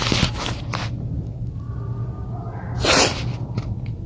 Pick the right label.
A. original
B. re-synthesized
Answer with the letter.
A